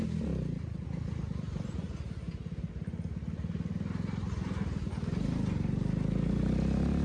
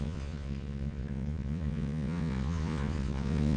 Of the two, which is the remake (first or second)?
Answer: second